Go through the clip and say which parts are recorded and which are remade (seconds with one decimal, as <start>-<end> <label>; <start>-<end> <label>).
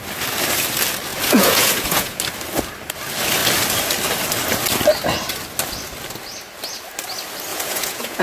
0.0-1.1 recorded; 1.1-2.2 remade; 2.2-7.5 recorded; 7.5-8.2 remade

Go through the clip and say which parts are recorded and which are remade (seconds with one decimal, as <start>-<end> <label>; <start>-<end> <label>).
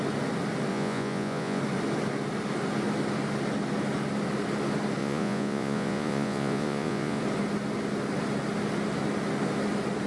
0.0-0.7 recorded; 0.7-1.6 remade; 1.6-5.0 recorded; 5.0-7.2 remade; 7.2-10.1 recorded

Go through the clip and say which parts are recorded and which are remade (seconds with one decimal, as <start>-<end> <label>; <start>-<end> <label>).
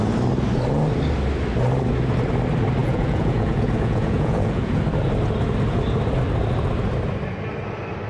0.0-2.8 recorded; 2.8-4.8 remade; 4.8-8.1 recorded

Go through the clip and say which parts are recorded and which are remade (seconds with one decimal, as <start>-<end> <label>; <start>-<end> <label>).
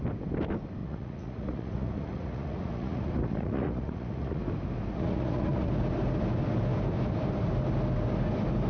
0.0-0.8 recorded; 0.8-4.4 remade; 4.4-4.9 recorded; 4.9-5.7 remade; 5.7-8.7 recorded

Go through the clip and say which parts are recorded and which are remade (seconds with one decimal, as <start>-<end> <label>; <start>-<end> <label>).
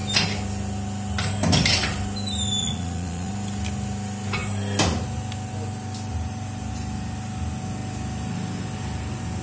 0.0-2.6 recorded; 2.6-3.3 remade; 3.3-9.4 recorded